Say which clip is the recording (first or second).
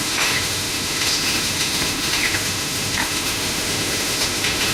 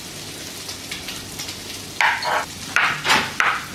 second